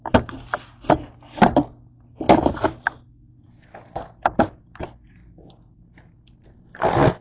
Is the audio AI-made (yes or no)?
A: no